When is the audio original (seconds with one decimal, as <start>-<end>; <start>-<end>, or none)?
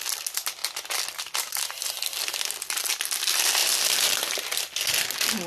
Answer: 0.0-5.5